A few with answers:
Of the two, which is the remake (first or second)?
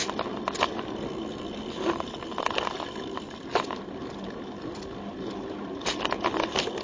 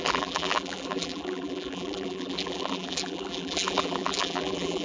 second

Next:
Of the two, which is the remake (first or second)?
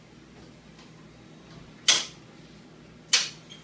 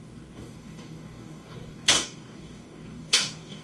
second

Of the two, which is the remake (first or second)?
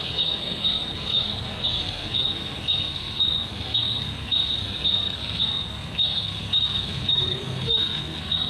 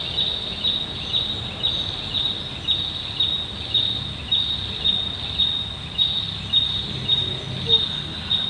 first